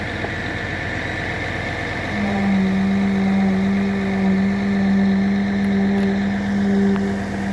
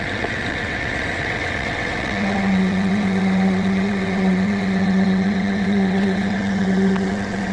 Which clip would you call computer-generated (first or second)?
second